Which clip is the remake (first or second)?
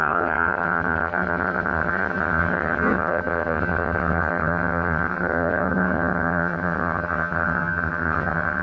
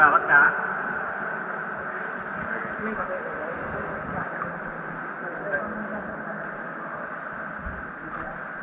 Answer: first